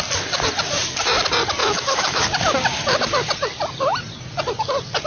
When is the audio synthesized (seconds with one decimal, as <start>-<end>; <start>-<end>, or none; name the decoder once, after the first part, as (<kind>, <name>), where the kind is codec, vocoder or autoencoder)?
1.6-2.2 (autoencoder, DAC-VAE)

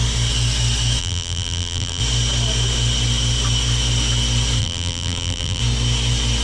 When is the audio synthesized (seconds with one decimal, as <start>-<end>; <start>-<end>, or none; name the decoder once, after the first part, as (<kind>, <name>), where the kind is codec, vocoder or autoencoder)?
1.0-2.0 (vocoder, BigVGAN v2); 4.6-5.6

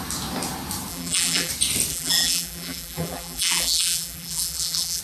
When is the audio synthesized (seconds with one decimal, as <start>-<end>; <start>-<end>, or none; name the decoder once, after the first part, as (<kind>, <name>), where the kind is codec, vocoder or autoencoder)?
0.9-1.5 (vocoder, BigVGAN v2); 1.9-5.0

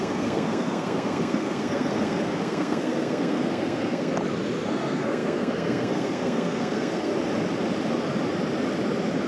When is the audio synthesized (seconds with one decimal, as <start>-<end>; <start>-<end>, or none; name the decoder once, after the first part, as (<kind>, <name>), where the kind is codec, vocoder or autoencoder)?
0.0-4.1 (codec, SNAC); 4.7-7.1

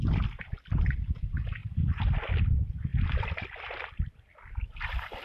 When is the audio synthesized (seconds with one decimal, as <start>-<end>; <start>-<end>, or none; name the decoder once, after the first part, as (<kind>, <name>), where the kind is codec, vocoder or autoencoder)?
2.9-5.2 (vocoder, BigVGAN v2)

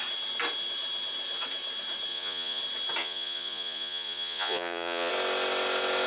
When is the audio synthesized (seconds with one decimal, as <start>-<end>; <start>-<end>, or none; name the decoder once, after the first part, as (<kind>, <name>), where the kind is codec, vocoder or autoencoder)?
2.1-2.6 (vocoder, Vocos); 3.0-5.1